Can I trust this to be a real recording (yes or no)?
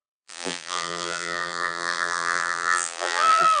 no